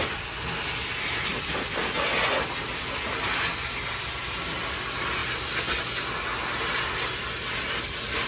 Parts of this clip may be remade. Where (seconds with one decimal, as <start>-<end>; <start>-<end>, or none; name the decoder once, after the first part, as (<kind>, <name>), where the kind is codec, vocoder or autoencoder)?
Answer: none